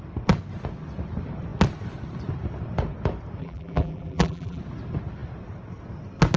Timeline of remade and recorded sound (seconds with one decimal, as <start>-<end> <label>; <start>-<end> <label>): 0.0-3.4 recorded; 3.4-4.6 remade; 4.6-6.4 recorded